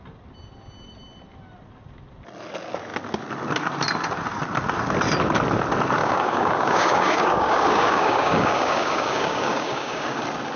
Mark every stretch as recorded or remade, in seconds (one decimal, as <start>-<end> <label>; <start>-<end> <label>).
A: 0.0-6.0 recorded; 6.0-10.2 remade; 10.2-10.6 recorded